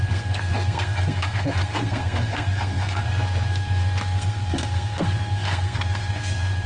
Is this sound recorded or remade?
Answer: remade